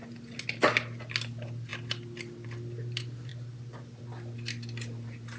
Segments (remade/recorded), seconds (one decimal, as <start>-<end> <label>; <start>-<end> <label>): 0.0-5.4 recorded